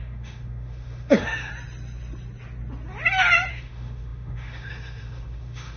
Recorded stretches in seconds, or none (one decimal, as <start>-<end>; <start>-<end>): 1.5-3.5